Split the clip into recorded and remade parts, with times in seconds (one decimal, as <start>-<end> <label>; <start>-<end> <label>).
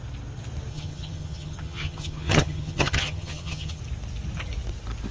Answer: 0.0-0.7 recorded; 0.7-3.8 remade; 3.8-5.1 recorded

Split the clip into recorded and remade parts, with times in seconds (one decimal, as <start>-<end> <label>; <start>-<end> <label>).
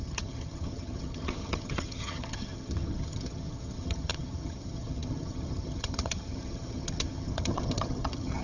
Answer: 0.0-8.4 remade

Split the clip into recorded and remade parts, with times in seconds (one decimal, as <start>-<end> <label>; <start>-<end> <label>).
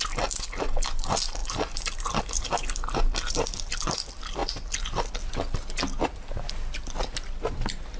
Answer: 0.0-8.0 recorded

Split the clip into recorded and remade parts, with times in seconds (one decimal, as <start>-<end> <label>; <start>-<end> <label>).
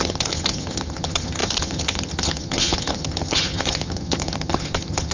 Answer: 0.0-5.1 remade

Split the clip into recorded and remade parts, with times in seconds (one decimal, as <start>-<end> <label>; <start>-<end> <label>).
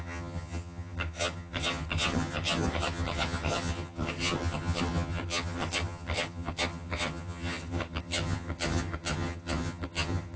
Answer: 0.0-10.4 remade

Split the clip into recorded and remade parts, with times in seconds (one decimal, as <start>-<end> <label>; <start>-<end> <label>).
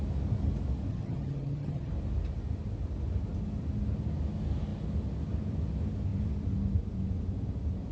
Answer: 0.0-0.9 recorded; 0.9-1.9 remade; 1.9-7.9 recorded